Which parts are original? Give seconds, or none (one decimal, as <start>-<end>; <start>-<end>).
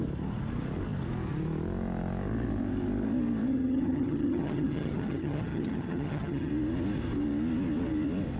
0.0-3.5; 6.5-8.4